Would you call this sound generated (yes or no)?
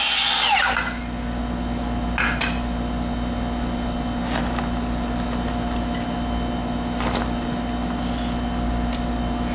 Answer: no